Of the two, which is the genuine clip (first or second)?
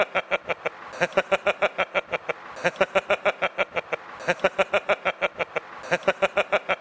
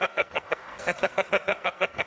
first